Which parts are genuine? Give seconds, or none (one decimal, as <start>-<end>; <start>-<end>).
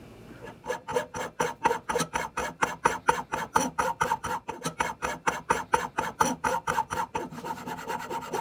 0.0-8.4